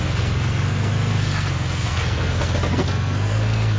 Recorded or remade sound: remade